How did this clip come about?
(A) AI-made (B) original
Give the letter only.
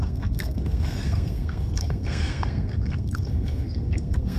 A